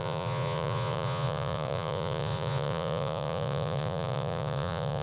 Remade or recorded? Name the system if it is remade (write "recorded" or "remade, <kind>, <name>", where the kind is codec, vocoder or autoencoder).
remade, vocoder, Vocos